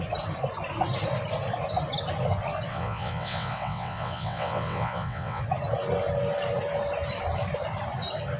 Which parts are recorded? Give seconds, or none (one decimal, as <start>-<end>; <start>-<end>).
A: 0.0-2.7; 5.4-8.4